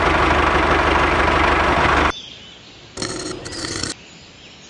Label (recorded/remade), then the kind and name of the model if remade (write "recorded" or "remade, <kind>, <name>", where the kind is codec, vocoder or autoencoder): recorded